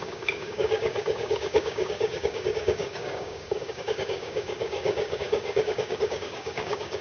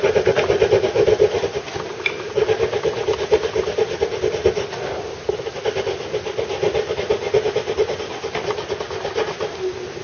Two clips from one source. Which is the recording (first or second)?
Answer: second